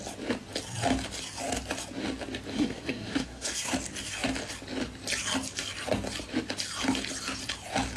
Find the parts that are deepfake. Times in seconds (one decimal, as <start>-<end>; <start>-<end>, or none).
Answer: 2.5-3.7